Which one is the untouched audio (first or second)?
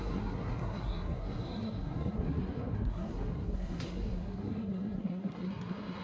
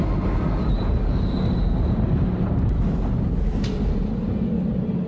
second